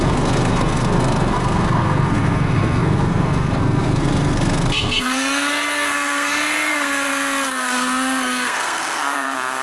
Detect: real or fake fake